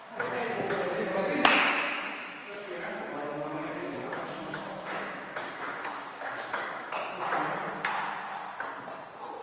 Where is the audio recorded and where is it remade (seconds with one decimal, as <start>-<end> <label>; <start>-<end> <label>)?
0.0-1.1 remade; 1.1-1.7 recorded; 1.7-7.0 remade; 7.0-9.4 recorded